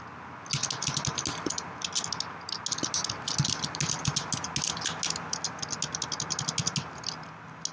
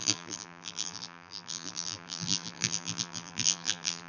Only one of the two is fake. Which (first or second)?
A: second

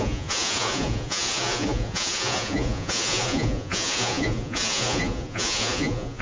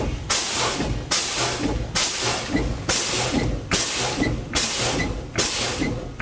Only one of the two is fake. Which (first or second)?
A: first